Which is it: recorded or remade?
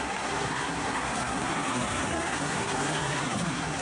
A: remade